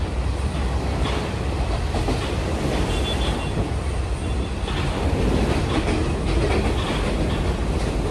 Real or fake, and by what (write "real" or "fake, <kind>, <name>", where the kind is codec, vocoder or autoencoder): real